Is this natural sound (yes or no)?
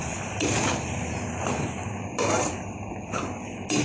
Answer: yes